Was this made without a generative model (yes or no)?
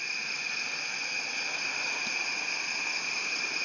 yes